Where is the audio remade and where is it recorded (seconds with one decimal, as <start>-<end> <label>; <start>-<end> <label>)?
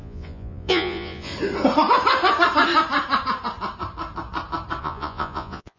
0.0-1.3 remade; 1.3-4.8 recorded; 4.8-5.8 remade